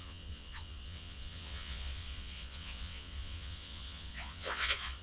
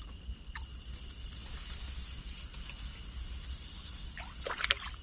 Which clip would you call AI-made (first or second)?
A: first